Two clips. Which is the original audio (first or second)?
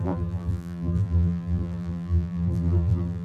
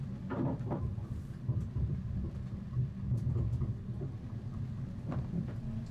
second